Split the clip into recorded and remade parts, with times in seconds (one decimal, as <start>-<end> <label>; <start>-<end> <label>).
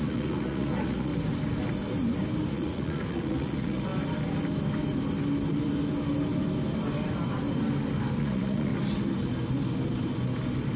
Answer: 0.0-1.1 remade; 1.1-2.5 recorded; 2.5-3.9 remade; 3.9-8.2 recorded; 8.2-8.7 remade; 8.7-10.8 recorded